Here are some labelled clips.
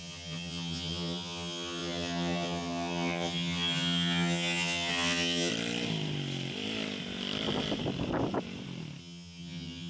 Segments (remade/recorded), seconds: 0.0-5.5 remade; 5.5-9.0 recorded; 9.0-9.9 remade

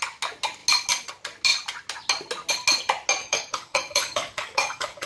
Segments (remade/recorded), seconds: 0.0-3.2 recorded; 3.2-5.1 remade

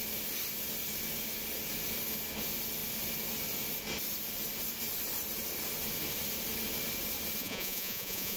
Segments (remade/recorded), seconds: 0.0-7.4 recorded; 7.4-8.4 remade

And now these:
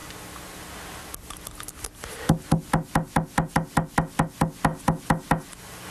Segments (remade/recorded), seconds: 0.0-5.9 recorded

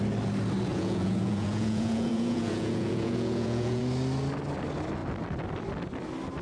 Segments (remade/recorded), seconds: 0.0-0.7 recorded; 0.7-3.8 remade; 3.8-6.4 recorded

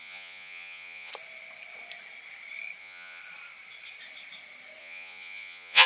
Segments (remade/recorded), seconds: 0.0-1.1 remade; 1.1-2.8 recorded; 2.8-3.2 remade; 3.2-4.8 recorded; 4.8-5.9 remade

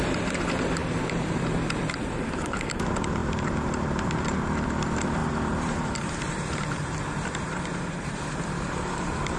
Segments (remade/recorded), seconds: 0.0-9.4 remade